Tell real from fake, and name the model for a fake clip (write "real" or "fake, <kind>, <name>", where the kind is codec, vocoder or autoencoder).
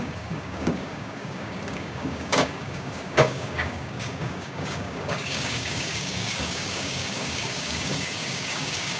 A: fake, codec, DAC